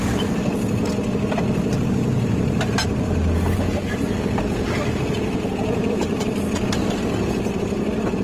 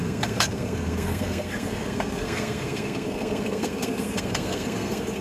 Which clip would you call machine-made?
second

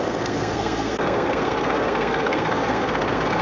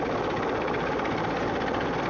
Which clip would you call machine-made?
first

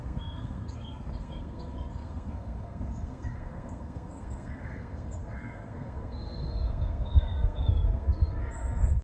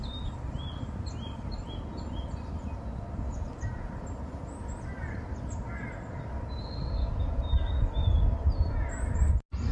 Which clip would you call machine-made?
first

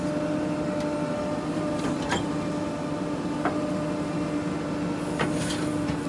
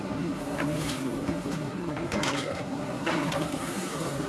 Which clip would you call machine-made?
second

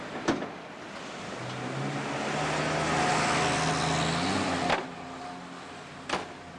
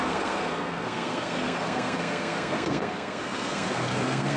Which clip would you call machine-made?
second